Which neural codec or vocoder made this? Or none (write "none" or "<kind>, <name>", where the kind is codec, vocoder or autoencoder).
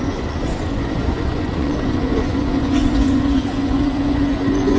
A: vocoder, Vocos